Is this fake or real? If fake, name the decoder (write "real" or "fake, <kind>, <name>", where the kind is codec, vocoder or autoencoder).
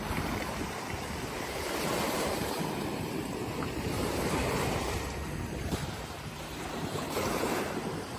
fake, vocoder, BigVGAN v2